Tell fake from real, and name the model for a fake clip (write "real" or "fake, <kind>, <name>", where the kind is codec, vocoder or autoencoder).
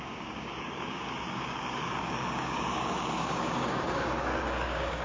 fake, codec, DAC